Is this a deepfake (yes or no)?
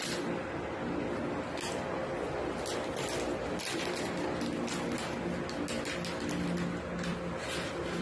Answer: no